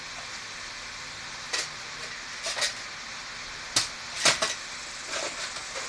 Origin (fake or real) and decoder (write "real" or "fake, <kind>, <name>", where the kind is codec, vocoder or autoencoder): real